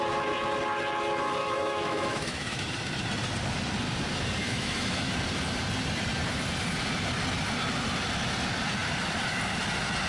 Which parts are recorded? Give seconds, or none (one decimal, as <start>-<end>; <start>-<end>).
0.0-1.4; 2.6-4.4; 5.2-10.1